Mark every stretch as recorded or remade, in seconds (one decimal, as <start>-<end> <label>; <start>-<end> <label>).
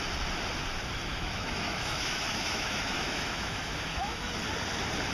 0.0-1.1 recorded; 1.1-4.2 remade; 4.2-5.1 recorded